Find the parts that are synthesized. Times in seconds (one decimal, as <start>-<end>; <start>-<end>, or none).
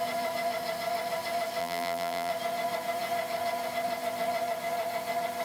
1.6-2.3